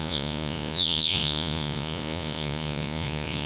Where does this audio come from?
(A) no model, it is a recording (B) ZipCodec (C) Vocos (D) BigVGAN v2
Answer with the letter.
C